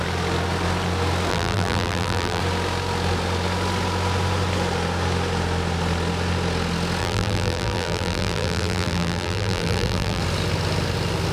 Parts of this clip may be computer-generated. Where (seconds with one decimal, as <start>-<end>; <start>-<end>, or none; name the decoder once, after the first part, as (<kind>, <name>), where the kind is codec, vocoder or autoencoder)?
1.3-2.4 (vocoder, BigVGAN v2); 7.0-10.2